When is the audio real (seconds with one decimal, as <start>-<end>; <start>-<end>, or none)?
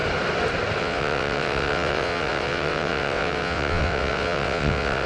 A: 0.0-0.8